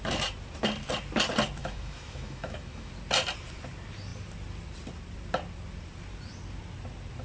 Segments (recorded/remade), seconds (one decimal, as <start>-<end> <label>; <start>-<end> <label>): 0.0-1.6 recorded; 1.6-2.9 remade; 2.9-7.2 recorded